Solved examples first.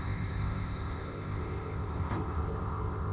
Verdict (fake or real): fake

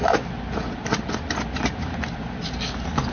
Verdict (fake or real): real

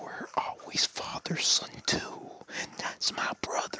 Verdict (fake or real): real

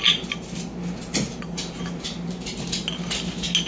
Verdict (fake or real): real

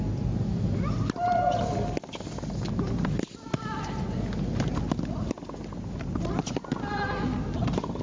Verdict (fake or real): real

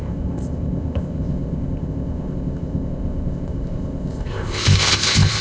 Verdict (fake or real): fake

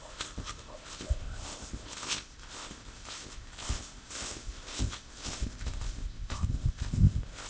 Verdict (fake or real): fake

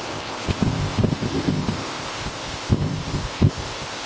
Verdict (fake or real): fake